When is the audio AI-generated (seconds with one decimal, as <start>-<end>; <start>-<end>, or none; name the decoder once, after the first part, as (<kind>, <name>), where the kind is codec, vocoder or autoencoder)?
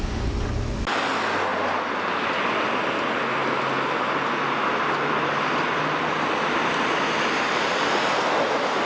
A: none